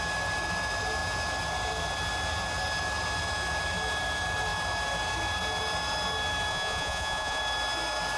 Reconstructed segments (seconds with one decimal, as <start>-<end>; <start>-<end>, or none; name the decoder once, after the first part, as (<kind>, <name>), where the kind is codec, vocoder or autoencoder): 6.5-7.4 (vocoder, Vocos)

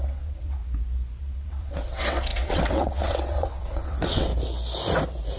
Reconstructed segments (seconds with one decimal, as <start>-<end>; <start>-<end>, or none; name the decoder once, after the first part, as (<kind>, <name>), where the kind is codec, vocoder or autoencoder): 0.0-0.6 (vocoder, WaveNeXt); 1.2-4.3

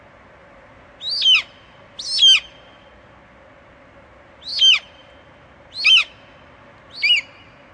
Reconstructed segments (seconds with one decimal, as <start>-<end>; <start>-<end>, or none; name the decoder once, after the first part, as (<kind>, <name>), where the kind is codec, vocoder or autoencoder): 4.5-5.1 (vocoder, BigVGAN v2)

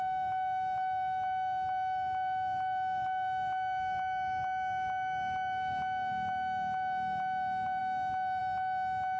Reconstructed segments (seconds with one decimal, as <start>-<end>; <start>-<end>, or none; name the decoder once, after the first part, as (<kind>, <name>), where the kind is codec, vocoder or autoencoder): none